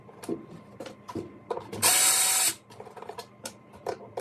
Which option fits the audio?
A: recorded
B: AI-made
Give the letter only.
B